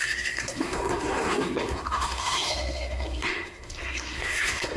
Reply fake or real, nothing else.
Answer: fake